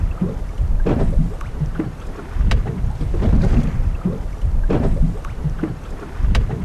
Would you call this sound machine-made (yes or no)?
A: no